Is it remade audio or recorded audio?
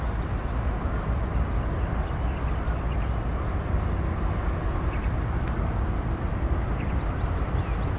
recorded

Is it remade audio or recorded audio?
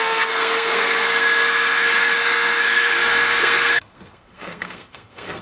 remade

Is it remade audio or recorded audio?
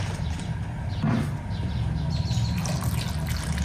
recorded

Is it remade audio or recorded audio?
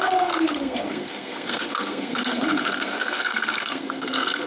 remade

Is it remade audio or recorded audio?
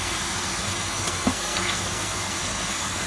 remade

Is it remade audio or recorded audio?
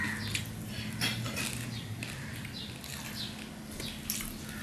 recorded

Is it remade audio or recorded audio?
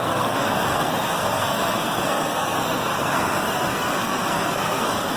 remade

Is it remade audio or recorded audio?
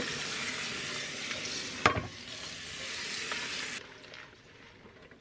recorded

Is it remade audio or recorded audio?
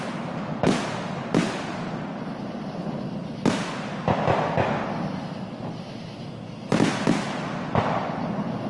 recorded